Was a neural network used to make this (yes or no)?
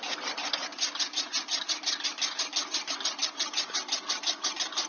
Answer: no